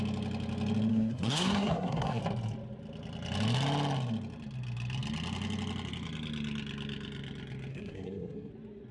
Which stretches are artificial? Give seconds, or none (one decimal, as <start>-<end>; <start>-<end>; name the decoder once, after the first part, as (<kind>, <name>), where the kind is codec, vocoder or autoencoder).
0.9-2.2 (codec, SNAC); 7.7-8.5